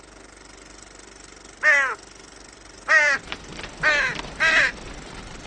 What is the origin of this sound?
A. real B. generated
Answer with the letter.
A